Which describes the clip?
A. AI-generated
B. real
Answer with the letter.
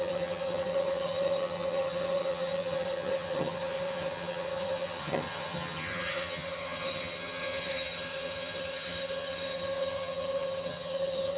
A